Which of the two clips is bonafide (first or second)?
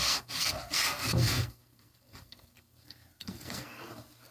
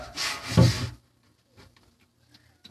second